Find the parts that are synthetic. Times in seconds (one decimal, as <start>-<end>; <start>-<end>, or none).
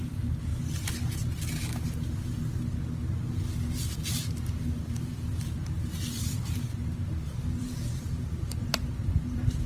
0.0-0.5; 3.7-9.7